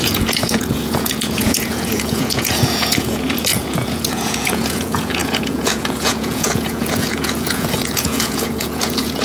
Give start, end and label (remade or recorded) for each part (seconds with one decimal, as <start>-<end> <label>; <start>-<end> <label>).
0.0-9.2 remade